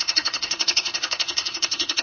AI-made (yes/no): yes